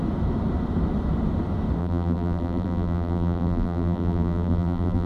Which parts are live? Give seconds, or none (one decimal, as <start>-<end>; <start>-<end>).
0.0-1.8